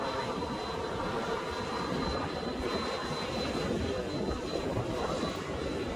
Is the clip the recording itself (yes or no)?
yes